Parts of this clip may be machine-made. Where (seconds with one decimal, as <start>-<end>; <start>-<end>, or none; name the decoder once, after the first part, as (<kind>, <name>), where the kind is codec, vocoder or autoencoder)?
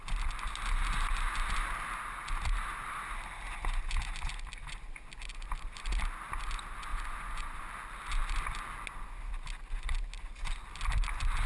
6.9-7.6 (vocoder, Vocos)